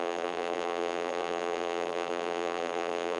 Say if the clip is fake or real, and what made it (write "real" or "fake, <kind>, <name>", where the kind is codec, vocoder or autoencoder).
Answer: fake, vocoder, BigVGAN v2